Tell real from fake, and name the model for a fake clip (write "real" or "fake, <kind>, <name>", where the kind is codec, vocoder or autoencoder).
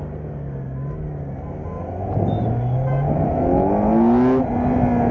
real